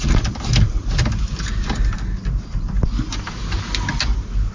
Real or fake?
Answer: real